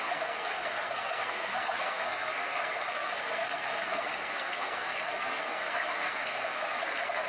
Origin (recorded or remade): remade